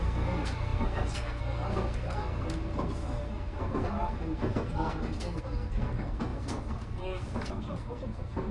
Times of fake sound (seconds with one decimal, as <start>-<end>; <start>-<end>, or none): 0.0-8.5